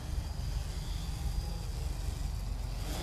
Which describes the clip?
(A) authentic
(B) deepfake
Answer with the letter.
A